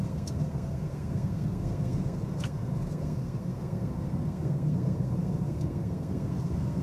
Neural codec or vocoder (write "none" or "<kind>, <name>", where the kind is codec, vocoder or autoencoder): codec, SNAC